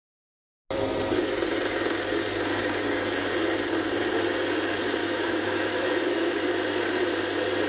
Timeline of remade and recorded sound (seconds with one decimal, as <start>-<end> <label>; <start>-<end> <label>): 0.0-5.0 recorded; 5.0-6.4 remade; 6.4-7.7 recorded